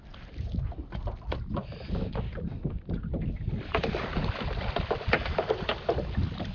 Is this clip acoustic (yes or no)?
yes